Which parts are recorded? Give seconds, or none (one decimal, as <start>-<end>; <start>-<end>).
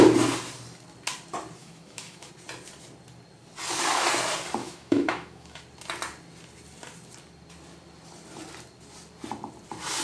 0.0-1.6; 2.3-4.6; 5.6-10.0